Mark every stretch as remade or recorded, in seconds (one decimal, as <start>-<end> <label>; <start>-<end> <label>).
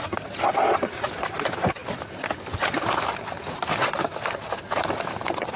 0.0-5.6 recorded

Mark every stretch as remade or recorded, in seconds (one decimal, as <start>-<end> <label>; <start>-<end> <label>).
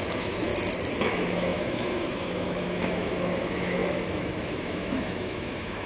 0.0-0.5 remade; 0.5-1.0 recorded; 1.0-5.9 remade